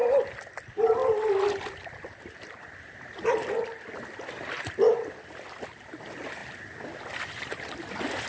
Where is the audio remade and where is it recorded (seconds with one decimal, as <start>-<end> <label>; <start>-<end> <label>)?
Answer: 0.0-8.3 recorded